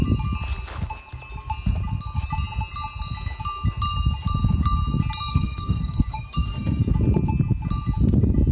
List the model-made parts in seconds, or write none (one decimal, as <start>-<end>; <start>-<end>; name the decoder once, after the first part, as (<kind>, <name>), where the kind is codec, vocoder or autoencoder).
5.3-6.8 (codec, SNAC)